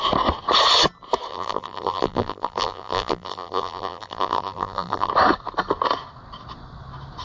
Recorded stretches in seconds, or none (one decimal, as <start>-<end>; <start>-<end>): 0.0-1.3; 5.1-7.2